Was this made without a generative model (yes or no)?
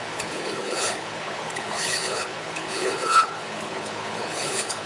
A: no